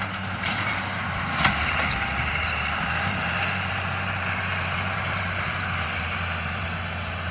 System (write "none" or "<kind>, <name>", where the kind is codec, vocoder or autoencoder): vocoder, BigVGAN v2